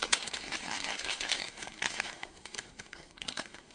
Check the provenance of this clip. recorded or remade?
remade